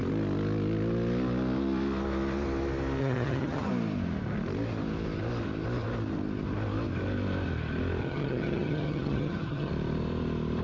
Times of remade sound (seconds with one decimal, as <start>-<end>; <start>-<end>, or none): 3.0-3.7; 8.0-9.7

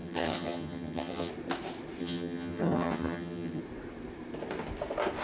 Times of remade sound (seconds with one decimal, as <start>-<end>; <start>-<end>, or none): 0.0-1.3; 2.0-3.6

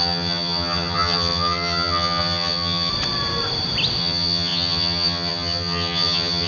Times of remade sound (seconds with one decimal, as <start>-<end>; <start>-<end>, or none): 0.0-2.9; 4.0-6.5

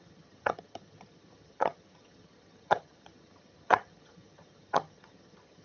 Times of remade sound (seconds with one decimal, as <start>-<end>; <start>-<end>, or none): 0.0-5.6